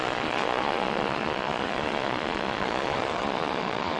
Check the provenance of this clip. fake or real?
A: fake